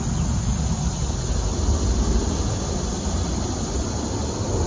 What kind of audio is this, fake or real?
real